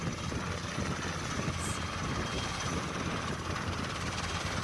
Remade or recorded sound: recorded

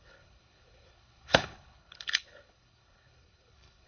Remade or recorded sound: remade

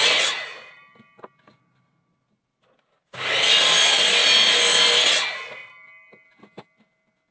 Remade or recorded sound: recorded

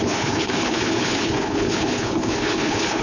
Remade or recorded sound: remade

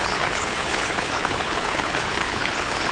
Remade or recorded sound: remade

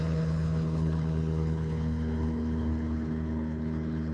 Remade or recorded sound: remade